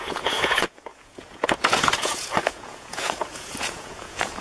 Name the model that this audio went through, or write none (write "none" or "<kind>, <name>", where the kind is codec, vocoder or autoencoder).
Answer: vocoder, Vocos